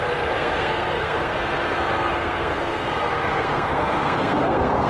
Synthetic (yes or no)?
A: yes